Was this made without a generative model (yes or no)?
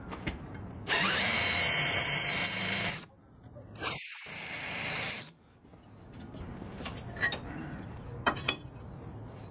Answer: no